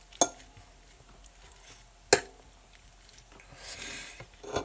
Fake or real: real